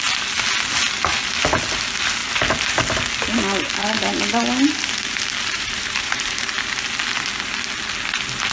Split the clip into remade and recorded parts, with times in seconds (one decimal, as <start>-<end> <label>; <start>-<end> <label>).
0.0-5.5 recorded; 5.5-6.5 remade; 6.5-8.5 recorded